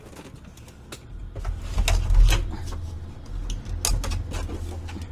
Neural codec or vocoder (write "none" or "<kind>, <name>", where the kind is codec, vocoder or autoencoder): none